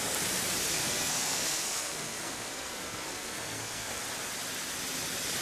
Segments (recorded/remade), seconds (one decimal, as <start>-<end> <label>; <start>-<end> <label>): 0.0-0.8 recorded; 0.8-4.0 remade; 4.0-5.4 recorded